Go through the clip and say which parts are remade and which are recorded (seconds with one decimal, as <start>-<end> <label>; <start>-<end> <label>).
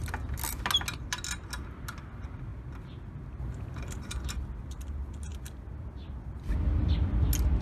0.0-7.6 recorded